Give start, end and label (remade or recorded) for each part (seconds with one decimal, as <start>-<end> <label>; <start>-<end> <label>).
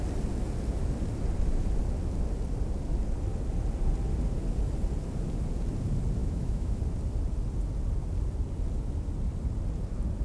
0.0-6.2 recorded; 6.2-6.8 remade; 6.8-10.2 recorded